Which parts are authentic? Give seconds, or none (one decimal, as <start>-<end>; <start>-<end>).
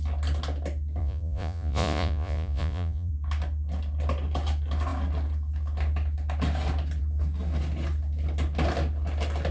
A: 0.0-1.0; 3.1-9.5